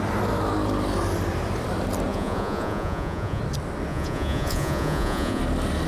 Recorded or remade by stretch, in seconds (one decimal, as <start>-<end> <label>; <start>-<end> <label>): 0.0-2.1 recorded; 2.1-3.4 remade; 3.4-3.9 recorded; 3.9-5.4 remade; 5.4-5.9 recorded